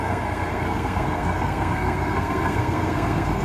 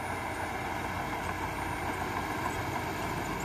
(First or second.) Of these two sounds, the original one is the second